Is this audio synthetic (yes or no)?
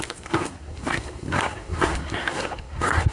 yes